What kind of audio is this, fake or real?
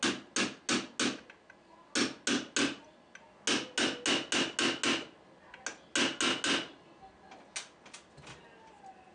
real